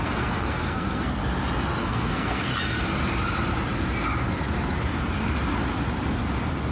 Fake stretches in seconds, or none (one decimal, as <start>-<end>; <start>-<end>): 0.0-1.2; 1.8-2.5